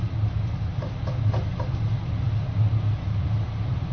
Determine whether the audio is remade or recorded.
recorded